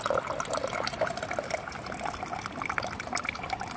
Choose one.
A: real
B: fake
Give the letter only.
A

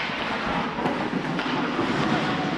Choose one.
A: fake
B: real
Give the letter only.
B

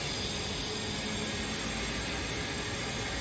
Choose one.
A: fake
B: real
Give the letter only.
B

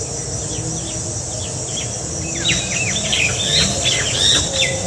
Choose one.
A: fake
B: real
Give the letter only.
B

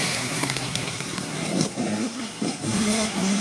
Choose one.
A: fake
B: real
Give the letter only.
A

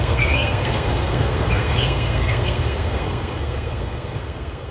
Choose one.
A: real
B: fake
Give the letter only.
B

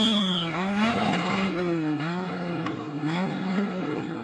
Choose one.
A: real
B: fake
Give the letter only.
B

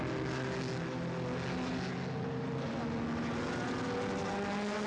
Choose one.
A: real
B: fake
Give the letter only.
A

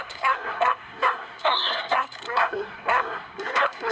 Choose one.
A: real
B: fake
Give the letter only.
B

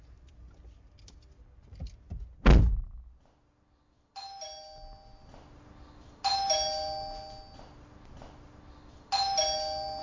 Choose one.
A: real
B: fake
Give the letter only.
A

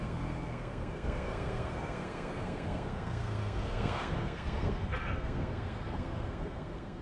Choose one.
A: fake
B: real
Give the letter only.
A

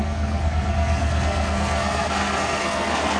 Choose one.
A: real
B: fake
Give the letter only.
B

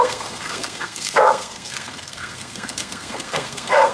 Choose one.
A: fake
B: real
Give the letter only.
A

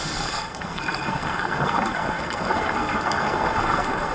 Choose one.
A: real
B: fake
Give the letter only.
B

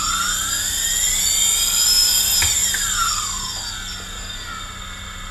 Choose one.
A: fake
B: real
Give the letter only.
B